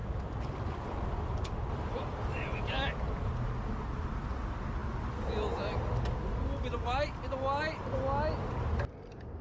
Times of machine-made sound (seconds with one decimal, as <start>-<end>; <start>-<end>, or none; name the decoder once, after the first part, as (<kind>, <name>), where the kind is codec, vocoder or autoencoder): 0.0-3.3 (vocoder, BigVGAN v2)